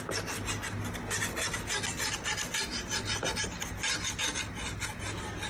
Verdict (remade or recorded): recorded